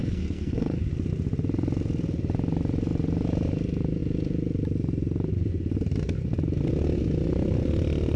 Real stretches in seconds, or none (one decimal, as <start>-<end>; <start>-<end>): 0.8-8.2